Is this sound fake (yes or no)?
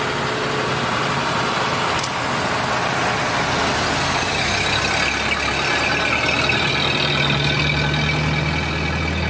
no